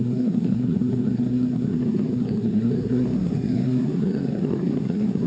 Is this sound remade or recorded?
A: remade